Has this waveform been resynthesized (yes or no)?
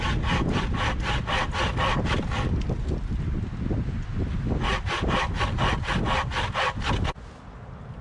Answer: no